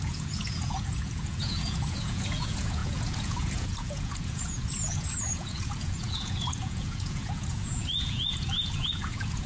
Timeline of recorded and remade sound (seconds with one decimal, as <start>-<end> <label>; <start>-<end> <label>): 0.0-9.5 remade